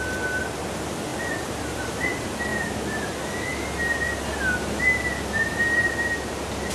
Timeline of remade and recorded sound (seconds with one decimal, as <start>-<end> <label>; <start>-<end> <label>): 0.0-1.1 recorded; 1.1-1.6 remade; 1.6-6.7 recorded